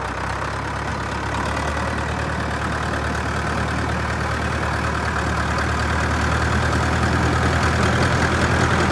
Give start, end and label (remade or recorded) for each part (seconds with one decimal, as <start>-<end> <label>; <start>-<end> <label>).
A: 0.0-8.9 recorded